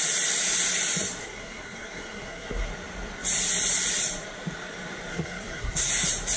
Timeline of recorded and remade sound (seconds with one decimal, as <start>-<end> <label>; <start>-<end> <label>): 0.0-1.2 recorded; 1.2-2.7 remade; 2.7-5.1 recorded; 5.1-5.9 remade; 5.9-6.4 recorded